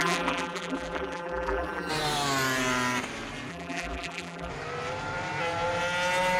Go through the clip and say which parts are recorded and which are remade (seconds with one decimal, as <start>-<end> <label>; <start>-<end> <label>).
0.0-1.9 remade; 1.9-3.5 recorded; 3.5-4.5 remade; 4.5-6.4 recorded